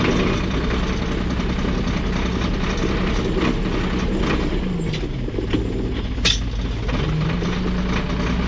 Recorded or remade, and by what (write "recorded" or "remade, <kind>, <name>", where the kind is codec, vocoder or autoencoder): recorded